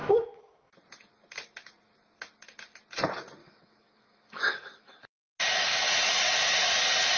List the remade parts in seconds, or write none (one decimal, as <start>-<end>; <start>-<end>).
0.0-0.7; 3.4-5.0